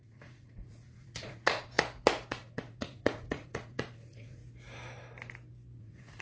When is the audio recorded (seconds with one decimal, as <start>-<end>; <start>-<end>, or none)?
1.7-2.3; 4.4-5.8

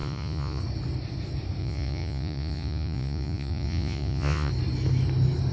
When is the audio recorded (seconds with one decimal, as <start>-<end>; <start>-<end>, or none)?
0.6-1.6; 4.5-5.5

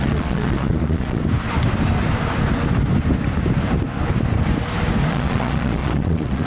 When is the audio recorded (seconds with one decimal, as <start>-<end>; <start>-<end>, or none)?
1.2-5.1

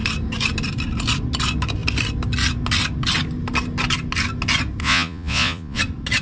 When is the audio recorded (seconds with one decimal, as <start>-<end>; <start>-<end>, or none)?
0.0-4.8; 5.8-6.2

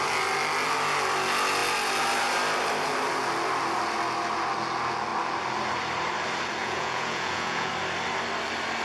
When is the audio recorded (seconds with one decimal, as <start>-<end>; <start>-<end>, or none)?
0.0-6.6; 7.7-8.8

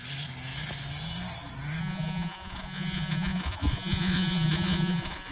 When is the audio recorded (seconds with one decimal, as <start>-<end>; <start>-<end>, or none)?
0.0-1.8

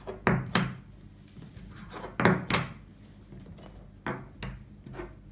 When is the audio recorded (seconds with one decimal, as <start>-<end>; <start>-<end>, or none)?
0.0-5.3

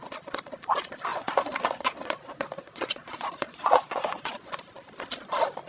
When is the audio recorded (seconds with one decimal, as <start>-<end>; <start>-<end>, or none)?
0.0-1.1; 4.5-5.7